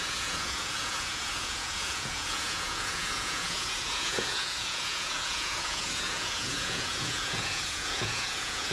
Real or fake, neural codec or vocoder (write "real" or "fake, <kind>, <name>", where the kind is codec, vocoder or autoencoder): fake, vocoder, Vocos